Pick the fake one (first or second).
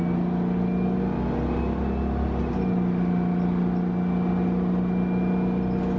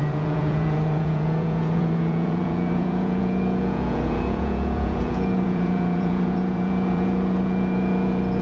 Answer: second